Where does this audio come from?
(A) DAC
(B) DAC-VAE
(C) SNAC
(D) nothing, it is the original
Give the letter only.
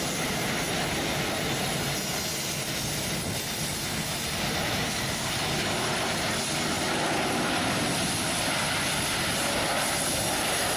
D